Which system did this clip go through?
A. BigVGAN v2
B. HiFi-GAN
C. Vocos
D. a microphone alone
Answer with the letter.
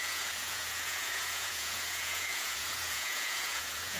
C